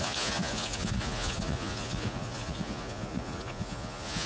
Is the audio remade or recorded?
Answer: remade